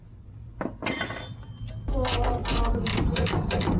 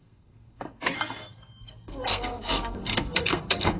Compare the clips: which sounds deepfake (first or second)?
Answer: second